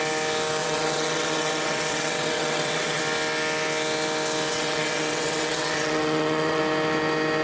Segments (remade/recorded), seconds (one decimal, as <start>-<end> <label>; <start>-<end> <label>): 0.0-0.6 recorded; 0.6-3.0 remade; 3.0-4.5 recorded; 4.5-6.6 remade; 6.6-7.4 recorded